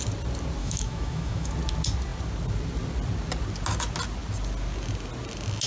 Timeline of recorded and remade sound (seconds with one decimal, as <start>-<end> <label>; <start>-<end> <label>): 0.0-0.6 recorded; 0.6-1.5 remade; 1.5-5.7 recorded